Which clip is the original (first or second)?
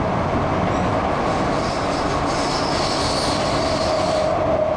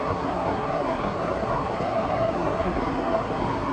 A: first